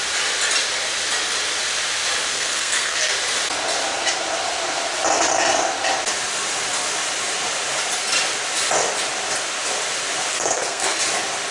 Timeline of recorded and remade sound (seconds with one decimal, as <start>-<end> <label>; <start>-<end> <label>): 0.0-2.3 recorded; 2.3-3.1 remade; 3.1-10.3 recorded; 10.3-11.0 remade; 11.0-11.5 recorded